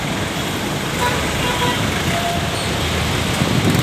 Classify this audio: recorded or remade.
recorded